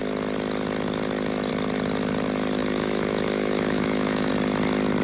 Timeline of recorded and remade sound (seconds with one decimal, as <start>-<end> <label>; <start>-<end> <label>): 0.0-2.6 recorded; 2.6-4.3 remade; 4.3-5.0 recorded